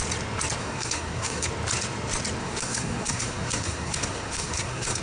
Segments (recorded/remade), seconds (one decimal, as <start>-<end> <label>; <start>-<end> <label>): 0.0-0.6 recorded; 0.6-1.5 remade; 1.5-2.4 recorded; 2.4-5.0 remade